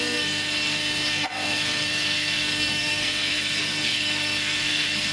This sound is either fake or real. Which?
fake